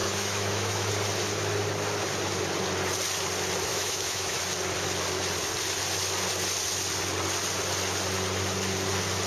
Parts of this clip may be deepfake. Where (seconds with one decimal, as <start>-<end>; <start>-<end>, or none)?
0.0-0.9; 3.7-4.4